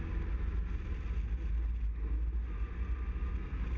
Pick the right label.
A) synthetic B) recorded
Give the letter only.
B